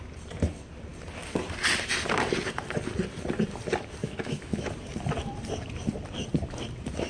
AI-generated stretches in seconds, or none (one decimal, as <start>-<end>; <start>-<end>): 4.0-4.7